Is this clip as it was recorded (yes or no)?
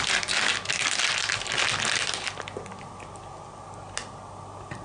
yes